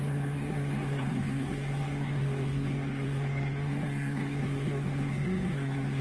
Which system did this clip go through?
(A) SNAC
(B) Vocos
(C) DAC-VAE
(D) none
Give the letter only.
A